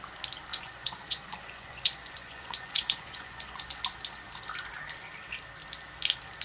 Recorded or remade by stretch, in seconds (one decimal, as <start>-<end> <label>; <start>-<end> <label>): 0.0-0.5 recorded; 0.5-3.8 remade; 3.8-6.4 recorded